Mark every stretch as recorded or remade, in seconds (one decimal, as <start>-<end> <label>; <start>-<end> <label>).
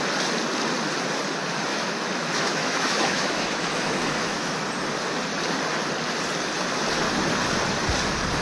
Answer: 0.0-1.7 recorded; 1.7-4.6 remade; 4.6-8.4 recorded